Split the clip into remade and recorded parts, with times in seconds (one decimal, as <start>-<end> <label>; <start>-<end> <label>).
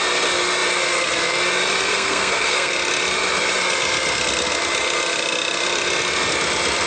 0.0-1.9 recorded; 1.9-2.7 remade; 2.7-6.9 recorded